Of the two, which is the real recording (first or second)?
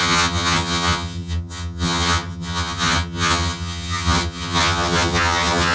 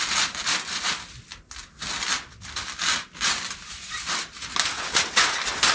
second